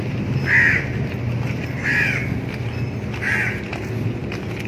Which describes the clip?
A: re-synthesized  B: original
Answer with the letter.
B